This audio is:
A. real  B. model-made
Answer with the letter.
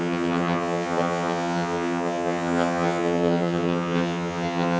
B